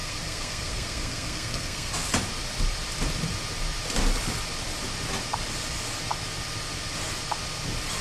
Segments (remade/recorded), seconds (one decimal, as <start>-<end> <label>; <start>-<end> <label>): 0.0-1.9 remade; 1.9-8.0 recorded